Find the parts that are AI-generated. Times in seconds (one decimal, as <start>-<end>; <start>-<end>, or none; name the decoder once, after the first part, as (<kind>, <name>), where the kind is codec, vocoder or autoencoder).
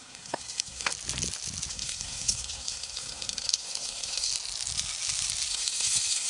0.0-0.9 (codec, SNAC); 1.7-4.3; 5.5-6.3